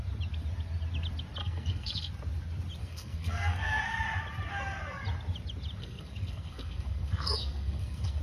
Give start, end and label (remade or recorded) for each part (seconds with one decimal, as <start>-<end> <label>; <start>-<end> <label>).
0.0-1.4 recorded; 1.4-2.1 remade; 2.1-2.8 recorded; 2.8-3.8 remade; 3.8-5.8 recorded; 5.8-8.2 remade